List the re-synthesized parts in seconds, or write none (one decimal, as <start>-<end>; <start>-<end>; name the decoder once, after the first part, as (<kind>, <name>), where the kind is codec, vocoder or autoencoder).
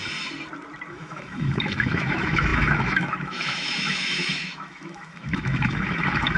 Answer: 0.9-6.4 (autoencoder, DAC-VAE)